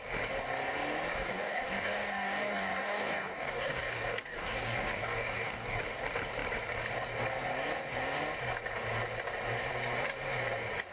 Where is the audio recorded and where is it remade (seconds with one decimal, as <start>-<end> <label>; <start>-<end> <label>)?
0.0-1.1 recorded; 1.1-5.8 remade; 5.8-10.9 recorded